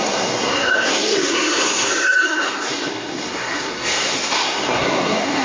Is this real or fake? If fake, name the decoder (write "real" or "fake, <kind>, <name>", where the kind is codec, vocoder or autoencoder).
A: fake, codec, SNAC